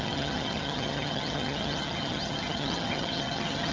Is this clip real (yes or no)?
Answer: no